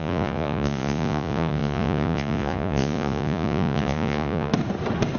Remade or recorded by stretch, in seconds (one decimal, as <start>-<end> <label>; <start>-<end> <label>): 0.0-4.5 remade; 4.5-5.2 recorded